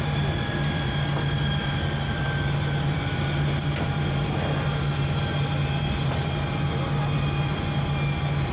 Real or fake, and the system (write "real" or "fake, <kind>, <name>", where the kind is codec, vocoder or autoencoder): real